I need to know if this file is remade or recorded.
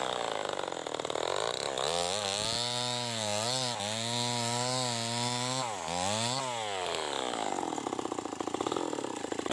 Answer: recorded